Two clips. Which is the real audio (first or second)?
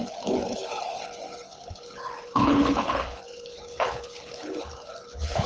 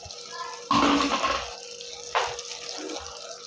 second